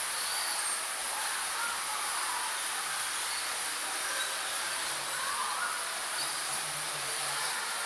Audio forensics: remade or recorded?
recorded